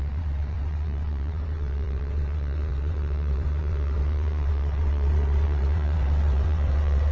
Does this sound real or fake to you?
fake